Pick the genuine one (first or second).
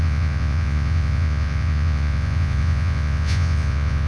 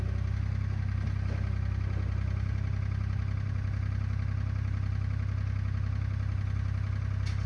second